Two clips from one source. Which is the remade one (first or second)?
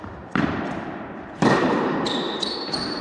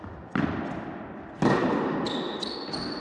first